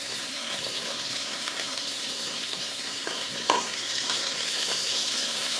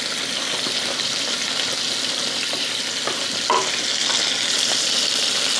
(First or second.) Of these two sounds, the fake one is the first